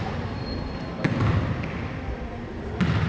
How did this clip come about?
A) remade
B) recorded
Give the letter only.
A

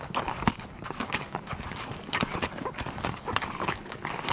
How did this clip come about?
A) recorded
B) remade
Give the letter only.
B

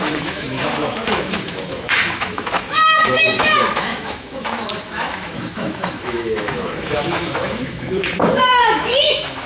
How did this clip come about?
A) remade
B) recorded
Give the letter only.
A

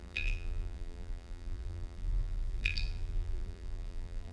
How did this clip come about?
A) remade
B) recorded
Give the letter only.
A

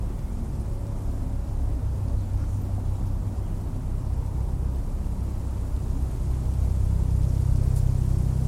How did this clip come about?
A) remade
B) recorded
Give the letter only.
B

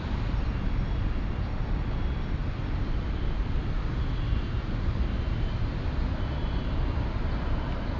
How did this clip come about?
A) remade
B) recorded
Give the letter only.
B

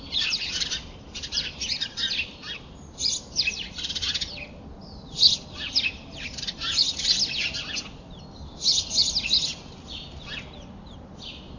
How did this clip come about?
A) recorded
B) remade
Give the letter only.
A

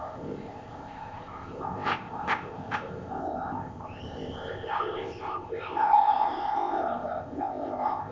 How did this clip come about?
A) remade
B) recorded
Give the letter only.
A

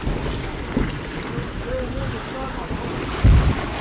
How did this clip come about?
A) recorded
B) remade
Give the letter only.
A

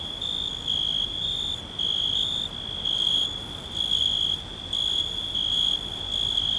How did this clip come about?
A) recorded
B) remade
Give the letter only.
A